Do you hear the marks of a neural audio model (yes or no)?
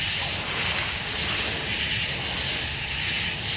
no